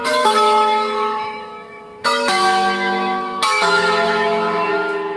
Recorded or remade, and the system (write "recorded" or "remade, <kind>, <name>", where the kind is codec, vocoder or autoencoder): remade, autoencoder, DAC-VAE